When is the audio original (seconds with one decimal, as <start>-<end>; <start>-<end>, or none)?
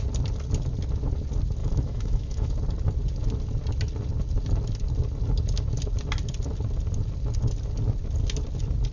0.0-1.6; 2.5-8.9